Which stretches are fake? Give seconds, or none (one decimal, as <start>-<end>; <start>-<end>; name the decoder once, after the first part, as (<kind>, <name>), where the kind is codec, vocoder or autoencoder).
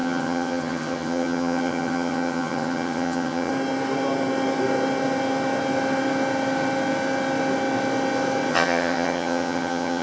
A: 0.0-3.5 (vocoder, HiFi-GAN); 8.5-10.0